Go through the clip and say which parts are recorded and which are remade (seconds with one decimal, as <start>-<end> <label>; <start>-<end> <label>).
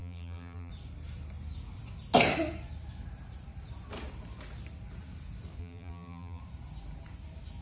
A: 0.0-0.7 remade; 0.7-5.6 recorded; 5.6-6.4 remade; 6.4-7.6 recorded